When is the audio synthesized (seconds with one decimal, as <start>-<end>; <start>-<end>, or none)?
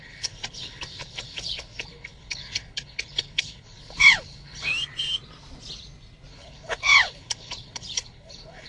0.0-4.7; 6.3-8.7